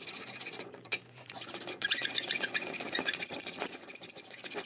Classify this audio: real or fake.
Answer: fake